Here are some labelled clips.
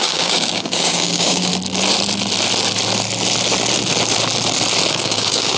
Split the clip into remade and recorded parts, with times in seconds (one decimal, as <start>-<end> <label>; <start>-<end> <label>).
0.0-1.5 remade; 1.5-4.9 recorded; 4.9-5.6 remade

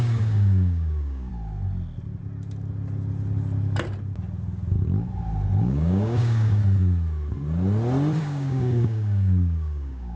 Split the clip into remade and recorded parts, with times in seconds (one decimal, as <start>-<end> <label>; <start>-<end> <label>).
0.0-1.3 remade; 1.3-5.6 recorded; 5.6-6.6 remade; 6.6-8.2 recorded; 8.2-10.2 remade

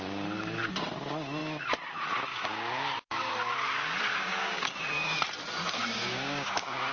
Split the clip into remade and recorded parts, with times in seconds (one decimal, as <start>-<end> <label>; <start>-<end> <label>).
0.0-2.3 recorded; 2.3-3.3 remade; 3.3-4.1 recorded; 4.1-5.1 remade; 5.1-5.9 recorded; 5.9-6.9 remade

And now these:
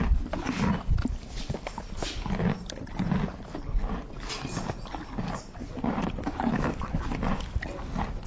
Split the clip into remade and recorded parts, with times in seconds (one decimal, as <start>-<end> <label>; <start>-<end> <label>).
0.0-8.3 recorded

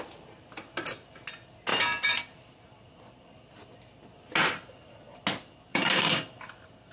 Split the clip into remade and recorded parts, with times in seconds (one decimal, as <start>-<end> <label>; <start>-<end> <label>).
0.0-5.7 recorded; 5.7-6.3 remade; 6.3-6.9 recorded

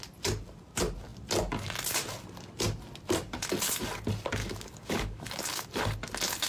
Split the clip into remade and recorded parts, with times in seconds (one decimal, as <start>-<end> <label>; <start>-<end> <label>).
0.0-4.4 recorded; 4.4-5.6 remade; 5.6-6.5 recorded

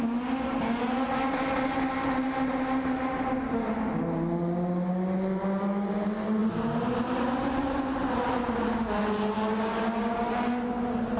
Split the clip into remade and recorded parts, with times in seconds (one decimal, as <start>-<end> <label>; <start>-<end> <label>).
0.0-11.2 recorded

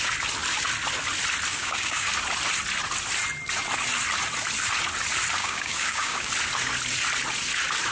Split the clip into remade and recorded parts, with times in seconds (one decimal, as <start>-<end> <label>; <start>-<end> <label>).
0.0-1.5 recorded; 1.5-2.1 remade; 2.1-5.4 recorded; 5.4-6.3 remade; 6.3-7.9 recorded